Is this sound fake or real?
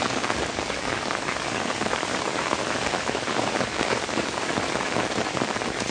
fake